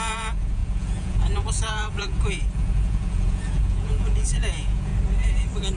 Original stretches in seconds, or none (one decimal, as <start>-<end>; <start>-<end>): 4.9-5.8